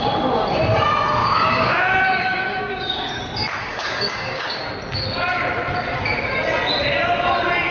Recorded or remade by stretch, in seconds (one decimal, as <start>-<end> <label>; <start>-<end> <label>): 0.0-1.2 recorded; 1.2-3.2 remade; 3.2-3.6 recorded; 3.6-4.6 remade; 4.6-7.7 recorded